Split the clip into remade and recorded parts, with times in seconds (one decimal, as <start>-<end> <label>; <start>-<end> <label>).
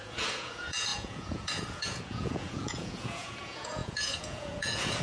0.0-5.0 remade